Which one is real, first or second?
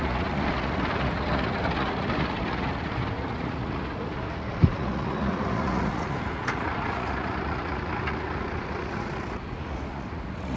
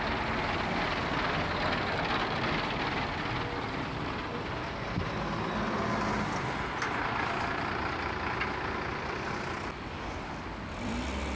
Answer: second